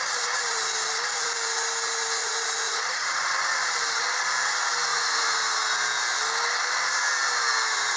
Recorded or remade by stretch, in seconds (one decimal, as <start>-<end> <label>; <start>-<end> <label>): 0.0-2.2 recorded; 2.2-3.2 remade; 3.2-4.9 recorded; 4.9-5.4 remade; 5.4-8.0 recorded